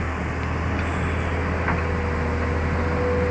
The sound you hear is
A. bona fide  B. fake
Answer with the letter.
A